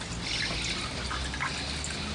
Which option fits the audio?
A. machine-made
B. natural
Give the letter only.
B